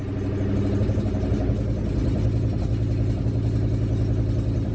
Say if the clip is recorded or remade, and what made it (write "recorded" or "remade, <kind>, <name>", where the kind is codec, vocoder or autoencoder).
recorded